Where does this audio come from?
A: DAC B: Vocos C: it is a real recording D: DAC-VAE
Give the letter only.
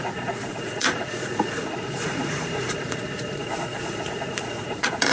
B